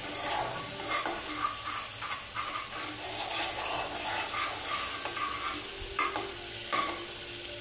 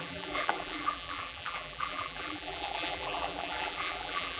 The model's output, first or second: second